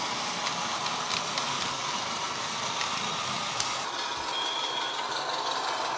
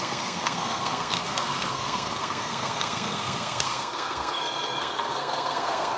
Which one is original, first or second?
first